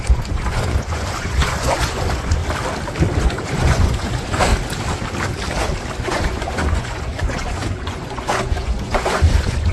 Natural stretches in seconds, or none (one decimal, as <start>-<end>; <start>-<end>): 2.4-3.2; 4.5-6.0